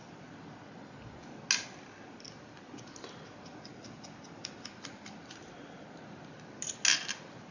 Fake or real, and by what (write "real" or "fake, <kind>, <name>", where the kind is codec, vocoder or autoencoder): real